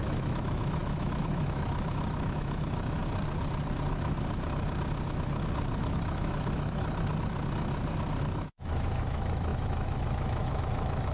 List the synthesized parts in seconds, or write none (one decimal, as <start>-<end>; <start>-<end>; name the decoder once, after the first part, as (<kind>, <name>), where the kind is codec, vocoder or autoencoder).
0.0-3.0 (autoencoder, DAC-VAE); 5.8-7.1; 8.2-11.1